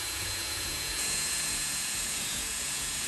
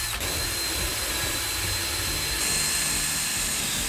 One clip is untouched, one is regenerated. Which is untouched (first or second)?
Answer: second